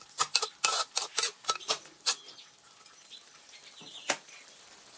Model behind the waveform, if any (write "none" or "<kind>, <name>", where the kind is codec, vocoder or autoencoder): none